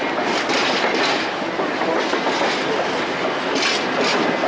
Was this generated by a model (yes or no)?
no